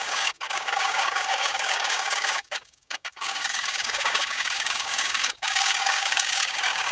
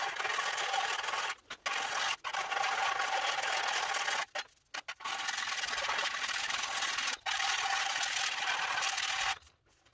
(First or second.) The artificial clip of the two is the first